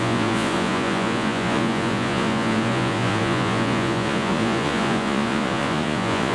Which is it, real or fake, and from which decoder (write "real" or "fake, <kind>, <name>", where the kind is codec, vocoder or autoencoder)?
fake, vocoder, Vocos